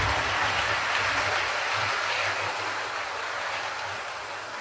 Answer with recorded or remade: recorded